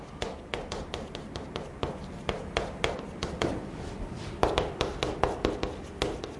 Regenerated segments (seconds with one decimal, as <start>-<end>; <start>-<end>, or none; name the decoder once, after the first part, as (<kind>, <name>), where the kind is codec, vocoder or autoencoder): none

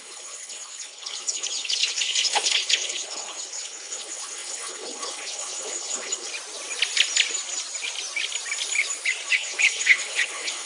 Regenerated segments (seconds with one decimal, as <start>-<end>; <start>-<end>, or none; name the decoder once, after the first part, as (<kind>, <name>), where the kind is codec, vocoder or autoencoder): 0.0-6.3 (codec, HILCodec); 9.3-10.7

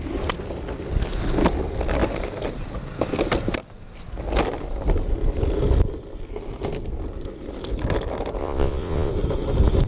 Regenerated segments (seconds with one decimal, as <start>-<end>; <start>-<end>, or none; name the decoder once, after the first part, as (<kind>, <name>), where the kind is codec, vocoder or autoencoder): 8.4-9.1 (vocoder, Vocos)

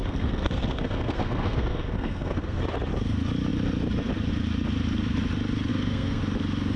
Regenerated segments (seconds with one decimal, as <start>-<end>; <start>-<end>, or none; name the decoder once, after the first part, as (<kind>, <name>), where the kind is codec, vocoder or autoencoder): 0.0-2.6 (codec, SNAC); 5.7-6.2

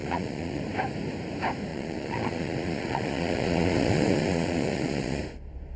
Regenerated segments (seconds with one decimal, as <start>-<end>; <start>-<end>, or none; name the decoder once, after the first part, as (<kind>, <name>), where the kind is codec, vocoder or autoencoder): 0.0-0.6 (vocoder, Vocos); 1.7-5.2